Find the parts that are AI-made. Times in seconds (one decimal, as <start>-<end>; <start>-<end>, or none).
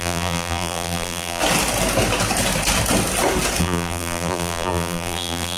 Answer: 0.0-1.4; 3.6-5.6